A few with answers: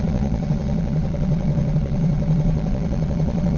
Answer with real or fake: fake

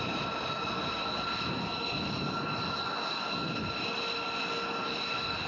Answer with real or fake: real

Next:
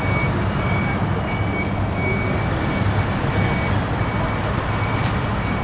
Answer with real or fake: real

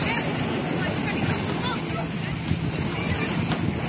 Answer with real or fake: real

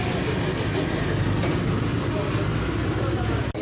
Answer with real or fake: real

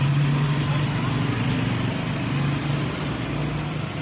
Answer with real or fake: real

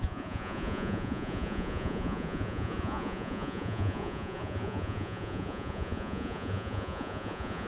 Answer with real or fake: fake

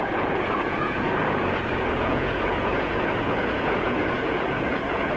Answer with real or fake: fake